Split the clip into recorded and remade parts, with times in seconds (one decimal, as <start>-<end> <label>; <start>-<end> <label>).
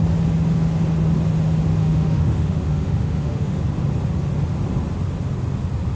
0.0-1.8 recorded; 1.8-3.6 remade; 3.6-6.0 recorded